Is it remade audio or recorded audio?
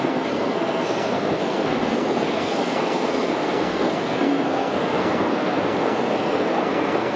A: remade